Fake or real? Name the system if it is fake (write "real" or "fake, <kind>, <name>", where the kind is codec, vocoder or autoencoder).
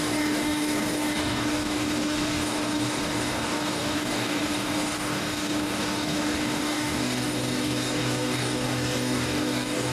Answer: fake, codec, DAC